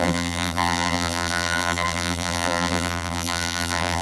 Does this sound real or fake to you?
fake